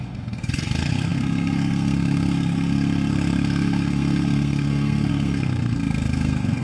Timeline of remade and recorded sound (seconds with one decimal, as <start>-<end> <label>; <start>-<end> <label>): 0.0-6.6 remade